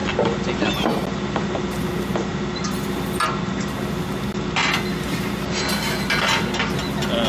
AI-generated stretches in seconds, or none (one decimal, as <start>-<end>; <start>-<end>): none